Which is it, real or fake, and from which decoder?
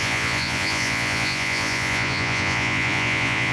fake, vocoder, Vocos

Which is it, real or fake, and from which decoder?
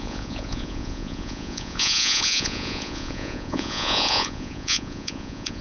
fake, vocoder, Vocos